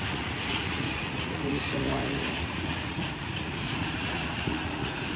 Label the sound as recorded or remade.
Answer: remade